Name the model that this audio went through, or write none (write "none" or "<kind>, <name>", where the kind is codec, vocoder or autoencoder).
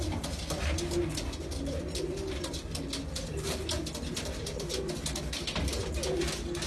none